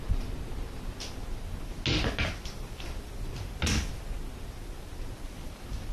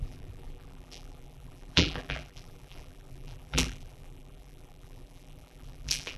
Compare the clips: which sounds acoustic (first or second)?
first